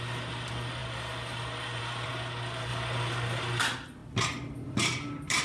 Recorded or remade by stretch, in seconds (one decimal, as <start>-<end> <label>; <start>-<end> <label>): 0.0-5.4 recorded